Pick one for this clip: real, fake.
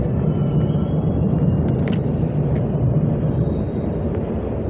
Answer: real